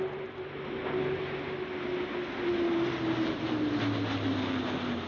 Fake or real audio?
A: real